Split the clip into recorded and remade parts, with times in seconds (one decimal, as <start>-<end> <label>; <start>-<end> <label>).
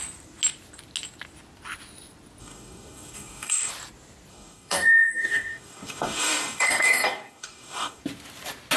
0.0-2.4 recorded; 2.4-3.7 remade; 3.7-4.3 recorded; 4.3-8.0 remade; 8.0-8.8 recorded